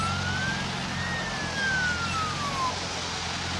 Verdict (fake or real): real